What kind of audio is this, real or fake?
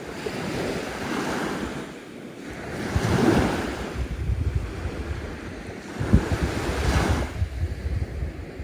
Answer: real